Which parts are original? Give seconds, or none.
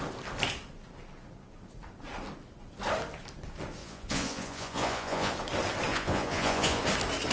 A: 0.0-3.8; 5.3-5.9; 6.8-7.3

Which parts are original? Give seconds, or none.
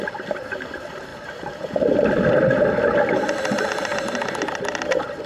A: 0.0-5.3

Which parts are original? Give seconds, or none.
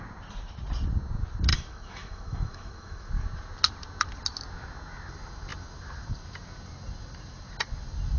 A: 0.0-1.5; 3.1-8.2